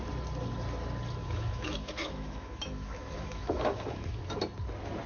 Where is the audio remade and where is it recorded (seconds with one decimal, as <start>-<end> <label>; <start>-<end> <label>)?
0.0-1.2 recorded; 1.2-4.2 remade; 4.2-5.1 recorded

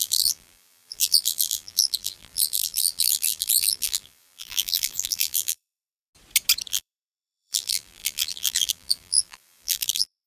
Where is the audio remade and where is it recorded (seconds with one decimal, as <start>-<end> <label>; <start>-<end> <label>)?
0.0-6.1 remade; 6.1-6.7 recorded; 6.7-10.3 remade

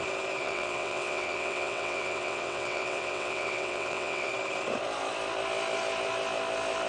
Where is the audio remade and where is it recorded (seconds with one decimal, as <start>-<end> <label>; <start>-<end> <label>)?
0.0-0.4 recorded; 0.4-4.3 remade; 4.3-6.9 recorded

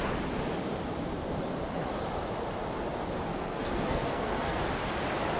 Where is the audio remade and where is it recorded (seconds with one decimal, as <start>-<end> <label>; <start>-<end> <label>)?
0.0-3.3 recorded; 3.3-4.6 remade; 4.6-5.4 recorded

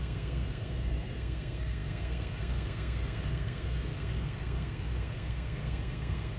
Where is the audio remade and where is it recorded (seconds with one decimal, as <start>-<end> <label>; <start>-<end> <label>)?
0.0-6.4 remade

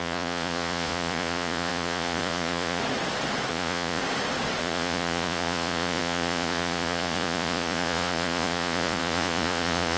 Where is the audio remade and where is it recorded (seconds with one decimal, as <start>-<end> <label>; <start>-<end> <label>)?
0.0-2.8 remade; 2.8-3.5 recorded; 3.5-4.0 remade; 4.0-4.6 recorded; 4.6-10.0 remade